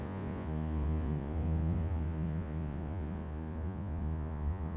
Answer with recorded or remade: remade